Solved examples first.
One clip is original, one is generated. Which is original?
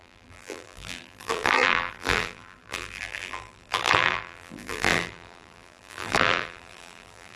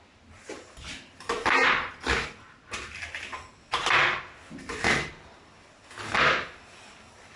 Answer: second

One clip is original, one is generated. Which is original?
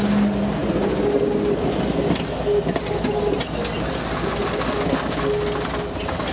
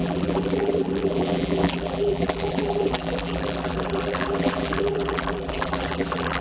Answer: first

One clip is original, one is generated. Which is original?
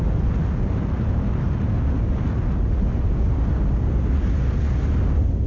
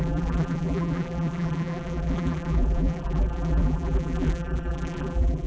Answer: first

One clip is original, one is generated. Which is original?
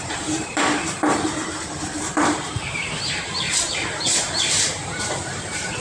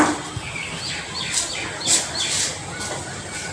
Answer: second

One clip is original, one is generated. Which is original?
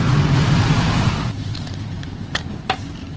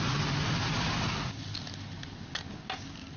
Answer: second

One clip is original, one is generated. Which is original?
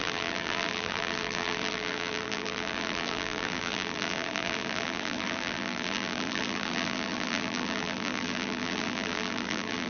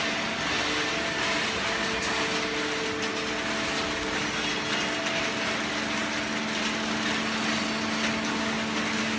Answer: second